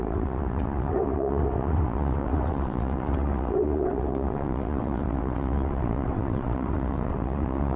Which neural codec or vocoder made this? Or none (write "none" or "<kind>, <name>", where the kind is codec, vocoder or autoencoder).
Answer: vocoder, WaveNeXt